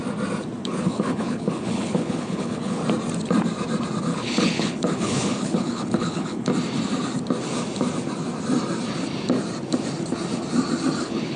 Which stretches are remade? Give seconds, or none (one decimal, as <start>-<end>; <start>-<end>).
0.6-2.8; 4.0-6.5; 11.0-11.4